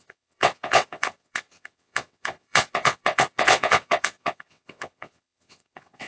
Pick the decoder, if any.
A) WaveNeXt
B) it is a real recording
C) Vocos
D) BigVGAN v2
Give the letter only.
A